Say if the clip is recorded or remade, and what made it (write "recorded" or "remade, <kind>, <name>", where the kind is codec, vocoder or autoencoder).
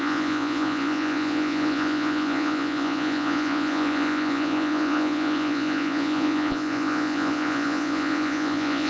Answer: remade, vocoder, Vocos